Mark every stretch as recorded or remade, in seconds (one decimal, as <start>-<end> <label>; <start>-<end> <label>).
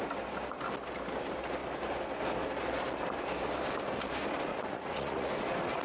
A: 0.0-4.5 recorded; 4.5-5.3 remade; 5.3-5.8 recorded